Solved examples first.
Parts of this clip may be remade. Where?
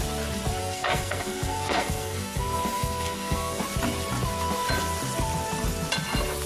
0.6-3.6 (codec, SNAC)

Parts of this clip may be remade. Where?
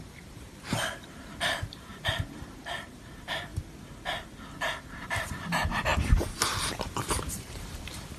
0.0-3.5 (vocoder, BigVGAN v2); 4.6-8.2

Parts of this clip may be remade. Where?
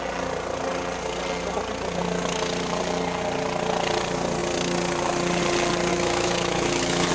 5.9-7.1 (autoencoder, DAC-VAE)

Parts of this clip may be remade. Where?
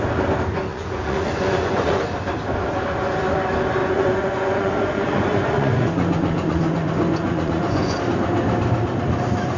0.7-2.0 (vocoder, Vocos); 3.8-8.0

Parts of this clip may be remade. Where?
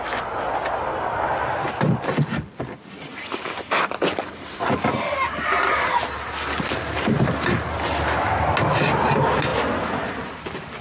none